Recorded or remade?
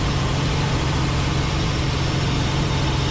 recorded